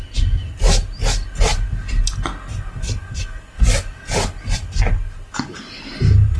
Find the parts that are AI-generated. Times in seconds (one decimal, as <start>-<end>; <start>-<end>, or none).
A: none